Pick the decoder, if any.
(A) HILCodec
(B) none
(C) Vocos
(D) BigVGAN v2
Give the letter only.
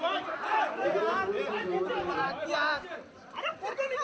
D